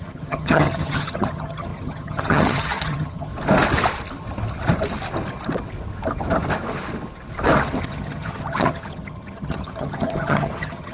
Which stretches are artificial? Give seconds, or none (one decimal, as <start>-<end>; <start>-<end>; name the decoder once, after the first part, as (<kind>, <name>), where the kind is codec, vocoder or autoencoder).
0.0-3.3 (vocoder, HiFi-GAN); 7.8-10.9

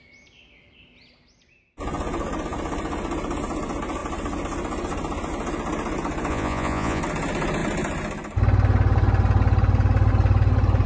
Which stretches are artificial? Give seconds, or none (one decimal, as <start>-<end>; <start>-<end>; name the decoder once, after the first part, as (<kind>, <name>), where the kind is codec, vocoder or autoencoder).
6.3-7.0 (vocoder, Vocos)

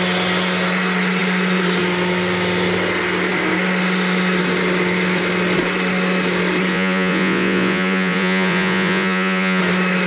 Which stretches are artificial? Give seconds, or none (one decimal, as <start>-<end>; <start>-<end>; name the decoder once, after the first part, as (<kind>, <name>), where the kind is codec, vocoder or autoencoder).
6.7-9.6 (vocoder, Vocos)

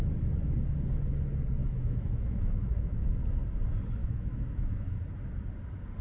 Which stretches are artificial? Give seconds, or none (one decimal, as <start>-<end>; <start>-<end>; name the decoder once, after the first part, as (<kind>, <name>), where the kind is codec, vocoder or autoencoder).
1.6-3.2 (autoencoder, DAC-VAE); 4.0-5.0

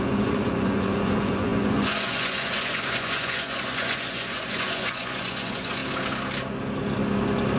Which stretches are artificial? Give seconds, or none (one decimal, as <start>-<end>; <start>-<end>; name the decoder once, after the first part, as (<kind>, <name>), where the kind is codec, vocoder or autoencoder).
0.0-5.8 (vocoder, Vocos)